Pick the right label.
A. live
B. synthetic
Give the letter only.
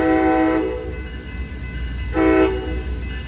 A